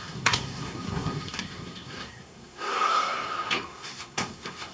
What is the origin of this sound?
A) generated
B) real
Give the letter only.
A